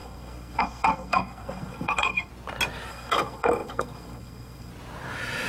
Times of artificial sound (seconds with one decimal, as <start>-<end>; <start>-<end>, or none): 0.0-2.3; 2.9-4.7